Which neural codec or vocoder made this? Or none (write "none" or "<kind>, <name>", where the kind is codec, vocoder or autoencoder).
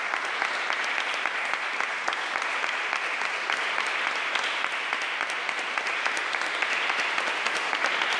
none